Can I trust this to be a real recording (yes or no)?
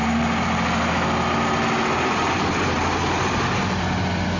yes